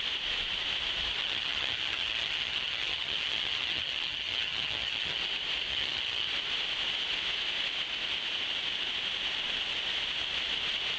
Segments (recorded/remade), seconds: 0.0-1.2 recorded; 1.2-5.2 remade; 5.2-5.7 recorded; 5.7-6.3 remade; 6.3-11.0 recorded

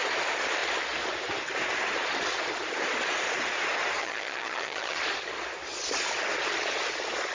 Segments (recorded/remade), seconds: 0.0-4.0 recorded; 4.0-5.0 remade; 5.0-7.3 recorded